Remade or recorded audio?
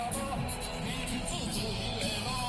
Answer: recorded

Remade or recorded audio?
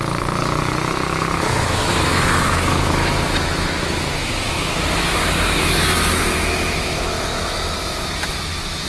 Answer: remade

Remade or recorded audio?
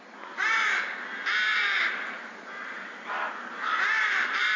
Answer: recorded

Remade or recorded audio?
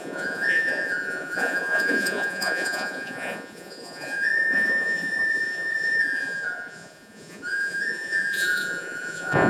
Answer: remade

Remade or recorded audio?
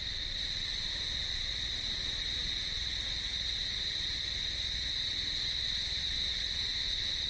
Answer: recorded